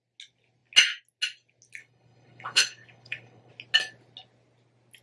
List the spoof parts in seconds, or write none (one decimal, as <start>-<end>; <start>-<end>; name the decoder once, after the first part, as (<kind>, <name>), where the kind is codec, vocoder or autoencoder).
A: 1.8-3.5 (codec, HILCodec)